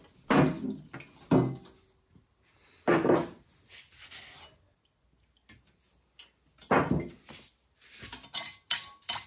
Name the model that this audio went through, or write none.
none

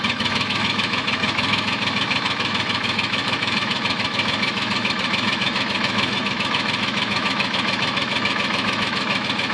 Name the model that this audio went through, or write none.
autoencoder, DAC-VAE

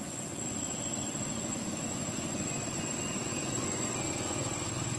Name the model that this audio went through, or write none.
vocoder, Vocos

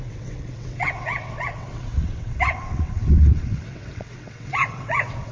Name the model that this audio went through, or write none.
vocoder, WaveNeXt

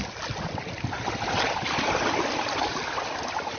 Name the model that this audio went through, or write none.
none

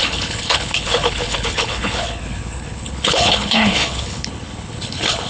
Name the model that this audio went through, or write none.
codec, HILCodec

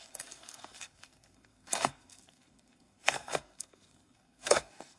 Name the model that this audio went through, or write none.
codec, SNAC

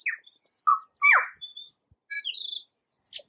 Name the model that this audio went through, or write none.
none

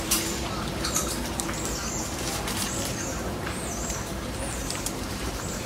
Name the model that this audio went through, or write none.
vocoder, BigVGAN v2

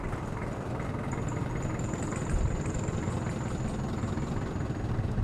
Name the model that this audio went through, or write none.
vocoder, BigVGAN v2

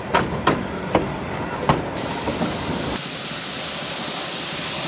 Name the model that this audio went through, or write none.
vocoder, BigVGAN v2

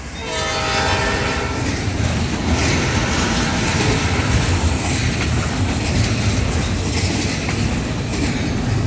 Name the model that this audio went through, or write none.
none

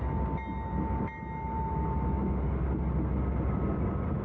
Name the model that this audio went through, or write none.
none